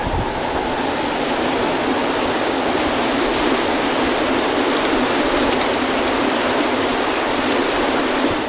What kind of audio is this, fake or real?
real